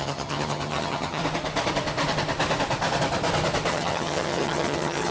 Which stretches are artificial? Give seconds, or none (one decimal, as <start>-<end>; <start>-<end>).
0.0-1.2; 3.7-5.1